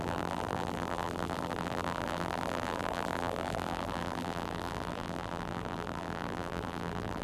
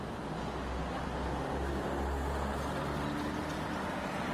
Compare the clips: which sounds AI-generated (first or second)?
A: first